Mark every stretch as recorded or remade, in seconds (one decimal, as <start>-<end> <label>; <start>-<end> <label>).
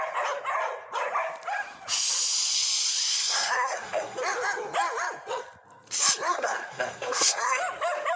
0.0-3.1 recorded; 3.1-4.2 remade; 4.2-6.3 recorded; 6.3-7.6 remade; 7.6-8.2 recorded